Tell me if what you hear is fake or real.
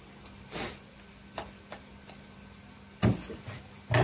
real